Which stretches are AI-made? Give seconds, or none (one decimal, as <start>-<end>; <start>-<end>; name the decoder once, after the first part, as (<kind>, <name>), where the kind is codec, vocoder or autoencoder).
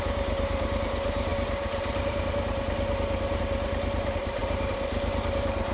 0.0-5.7 (vocoder, BigVGAN v2)